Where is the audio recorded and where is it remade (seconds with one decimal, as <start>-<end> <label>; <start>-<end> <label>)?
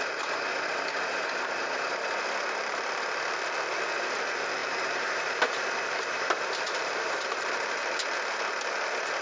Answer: 0.0-4.6 recorded; 4.6-7.5 remade; 7.5-9.2 recorded